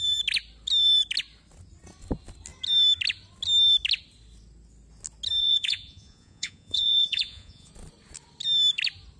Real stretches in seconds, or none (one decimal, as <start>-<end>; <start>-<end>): 0.0-5.4; 7.7-9.2